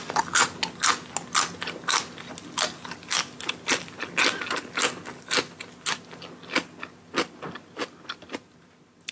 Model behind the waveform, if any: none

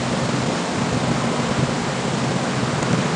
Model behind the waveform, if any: none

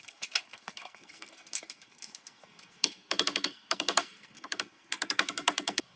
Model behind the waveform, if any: codec, SNAC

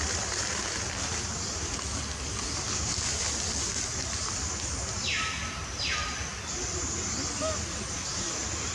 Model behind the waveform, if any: none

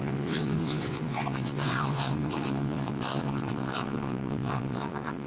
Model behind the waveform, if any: vocoder, WaveNeXt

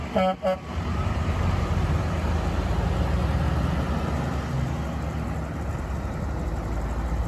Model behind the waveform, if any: none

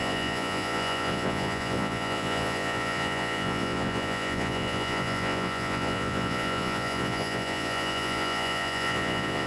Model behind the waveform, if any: vocoder, Vocos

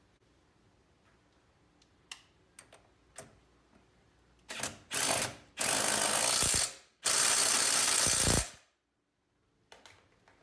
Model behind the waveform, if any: none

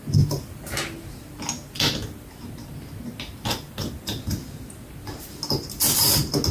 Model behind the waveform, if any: none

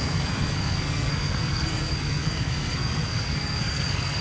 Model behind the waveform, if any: codec, SNAC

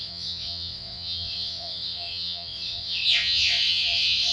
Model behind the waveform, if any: vocoder, WaveNeXt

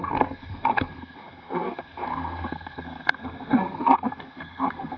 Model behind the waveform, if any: codec, SNAC